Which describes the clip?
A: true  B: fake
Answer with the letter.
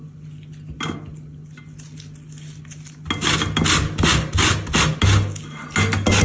A